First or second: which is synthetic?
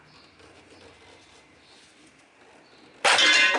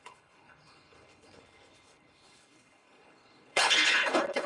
second